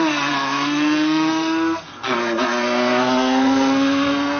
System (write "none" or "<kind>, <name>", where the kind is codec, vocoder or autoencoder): codec, SNAC